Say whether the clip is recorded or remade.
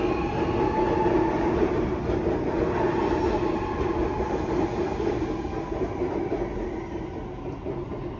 recorded